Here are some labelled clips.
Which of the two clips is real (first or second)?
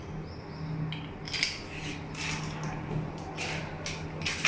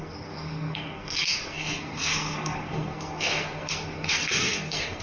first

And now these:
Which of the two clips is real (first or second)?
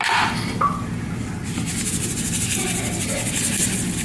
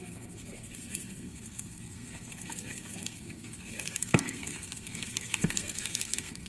first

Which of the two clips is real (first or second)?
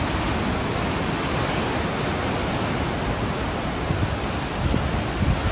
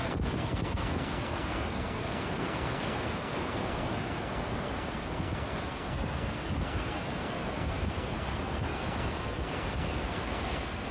first